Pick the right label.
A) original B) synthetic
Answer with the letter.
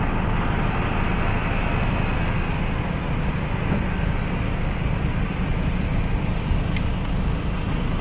B